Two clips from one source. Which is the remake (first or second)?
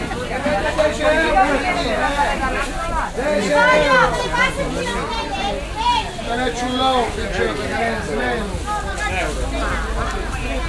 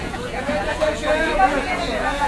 second